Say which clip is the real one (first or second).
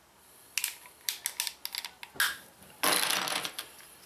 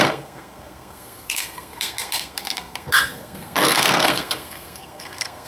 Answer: first